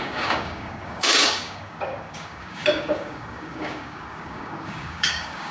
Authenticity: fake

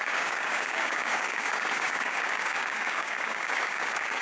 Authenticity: fake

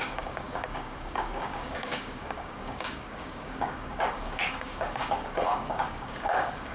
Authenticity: fake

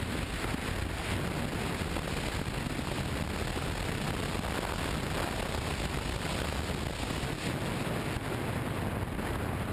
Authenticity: real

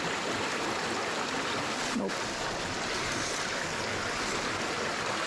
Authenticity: real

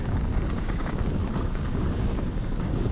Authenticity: fake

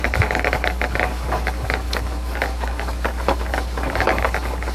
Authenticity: fake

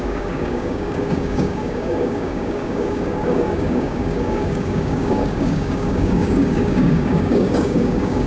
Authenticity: fake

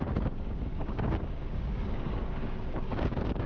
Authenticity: fake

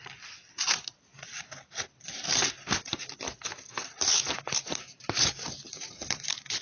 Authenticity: real